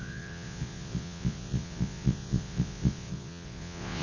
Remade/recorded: remade